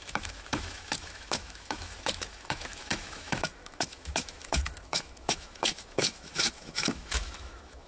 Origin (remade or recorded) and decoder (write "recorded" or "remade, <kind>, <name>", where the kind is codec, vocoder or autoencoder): remade, autoencoder, DAC-VAE